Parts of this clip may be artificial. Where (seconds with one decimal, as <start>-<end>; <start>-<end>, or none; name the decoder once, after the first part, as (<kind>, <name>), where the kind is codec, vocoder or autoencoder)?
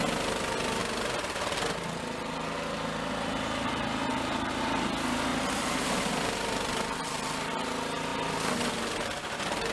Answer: 0.8-4.6 (vocoder, BigVGAN v2); 5.3-7.0